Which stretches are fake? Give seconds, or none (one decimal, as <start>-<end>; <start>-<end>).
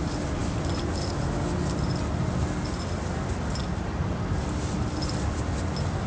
none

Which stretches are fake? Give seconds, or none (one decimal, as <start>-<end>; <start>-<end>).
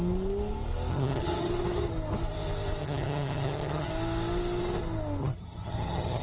0.9-1.5; 2.8-3.9; 5.2-6.2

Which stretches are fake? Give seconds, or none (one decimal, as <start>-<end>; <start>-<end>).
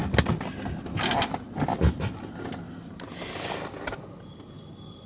none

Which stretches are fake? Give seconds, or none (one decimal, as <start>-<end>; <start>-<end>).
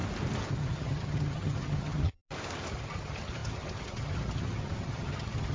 0.5-2.2; 2.7-5.5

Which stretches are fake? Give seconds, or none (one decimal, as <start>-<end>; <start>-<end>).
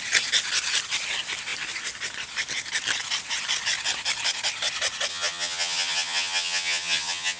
5.1-7.4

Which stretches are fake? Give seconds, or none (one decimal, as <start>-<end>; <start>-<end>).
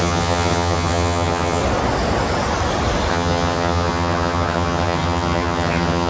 0.0-1.6; 3.1-6.1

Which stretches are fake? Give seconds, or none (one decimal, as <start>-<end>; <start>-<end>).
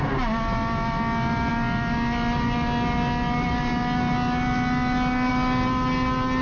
none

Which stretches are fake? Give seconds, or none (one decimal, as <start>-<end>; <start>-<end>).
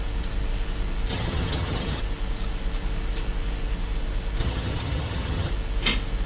1.1-2.0; 4.4-5.5